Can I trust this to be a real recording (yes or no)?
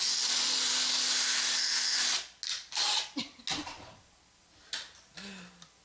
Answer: yes